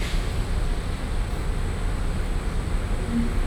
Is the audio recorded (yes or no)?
yes